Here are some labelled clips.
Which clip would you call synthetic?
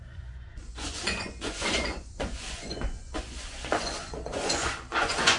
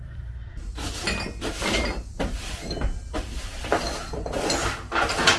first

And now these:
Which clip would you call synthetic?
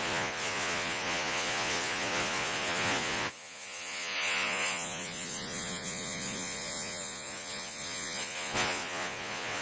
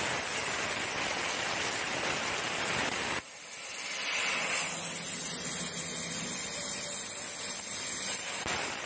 first